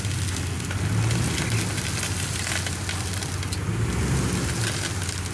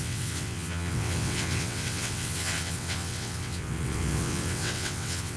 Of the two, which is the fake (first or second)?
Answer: second